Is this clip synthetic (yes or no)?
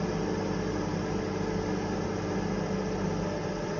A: no